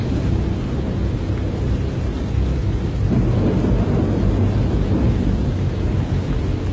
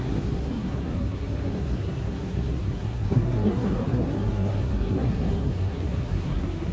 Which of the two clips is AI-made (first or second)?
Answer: second